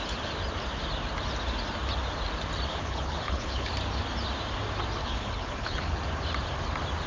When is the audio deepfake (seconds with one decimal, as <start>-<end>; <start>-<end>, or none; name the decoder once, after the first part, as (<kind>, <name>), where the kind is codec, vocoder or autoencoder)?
2.7-3.7 (codec, HILCodec); 5.0-6.0